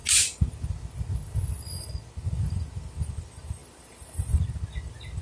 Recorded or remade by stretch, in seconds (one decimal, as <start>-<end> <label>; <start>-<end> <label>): 0.0-5.2 recorded